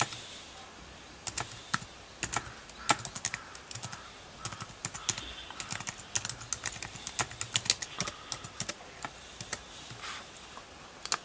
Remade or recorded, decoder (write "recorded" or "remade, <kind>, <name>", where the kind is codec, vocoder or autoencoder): recorded